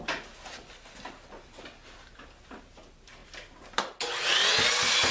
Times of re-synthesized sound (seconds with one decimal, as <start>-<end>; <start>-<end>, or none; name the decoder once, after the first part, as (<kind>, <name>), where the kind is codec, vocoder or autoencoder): none